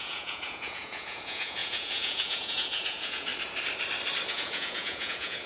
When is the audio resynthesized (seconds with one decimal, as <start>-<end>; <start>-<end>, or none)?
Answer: 0.0-3.3; 4.3-5.5